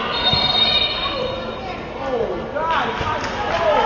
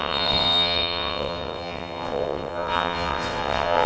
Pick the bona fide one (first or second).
first